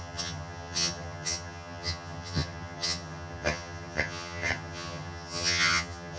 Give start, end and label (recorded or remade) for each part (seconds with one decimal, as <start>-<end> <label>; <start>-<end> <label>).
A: 0.0-6.2 remade